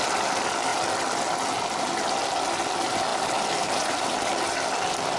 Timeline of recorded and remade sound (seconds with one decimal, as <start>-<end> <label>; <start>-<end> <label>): 0.0-5.2 recorded